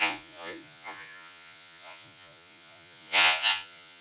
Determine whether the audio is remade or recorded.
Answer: remade